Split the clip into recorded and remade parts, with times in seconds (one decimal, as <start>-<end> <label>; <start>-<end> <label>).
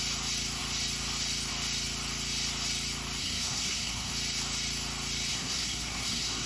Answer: 0.0-3.2 recorded; 3.2-4.1 remade; 4.1-5.3 recorded; 5.3-6.5 remade